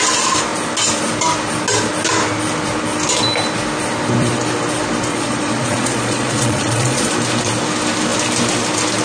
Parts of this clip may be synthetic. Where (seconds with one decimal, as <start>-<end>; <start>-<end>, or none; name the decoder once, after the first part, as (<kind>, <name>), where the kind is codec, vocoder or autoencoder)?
5.1-7.1 (vocoder, Vocos)